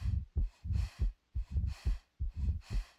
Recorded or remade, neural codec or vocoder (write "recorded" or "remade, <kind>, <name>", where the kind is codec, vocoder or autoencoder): remade, vocoder, BigVGAN v2